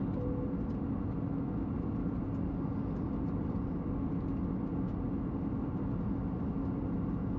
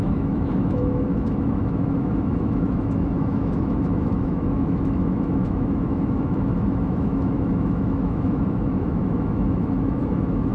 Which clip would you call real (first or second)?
first